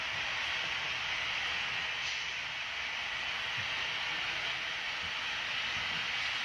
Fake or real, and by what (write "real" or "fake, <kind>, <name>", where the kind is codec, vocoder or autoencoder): real